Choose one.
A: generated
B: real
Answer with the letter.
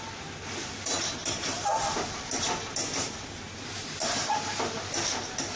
B